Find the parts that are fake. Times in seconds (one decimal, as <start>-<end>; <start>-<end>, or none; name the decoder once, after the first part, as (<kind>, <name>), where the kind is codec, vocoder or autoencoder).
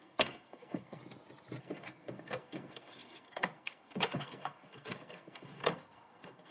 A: 0.0-1.0 (codec, SNAC); 1.6-6.5